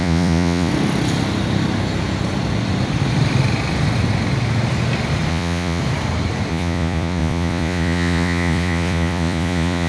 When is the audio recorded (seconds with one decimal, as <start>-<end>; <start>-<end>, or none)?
0.7-5.3; 5.8-6.5